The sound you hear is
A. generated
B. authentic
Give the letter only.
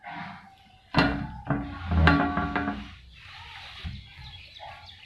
B